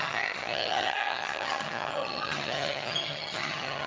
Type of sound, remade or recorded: remade